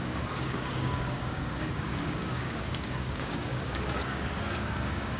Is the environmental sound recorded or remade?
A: remade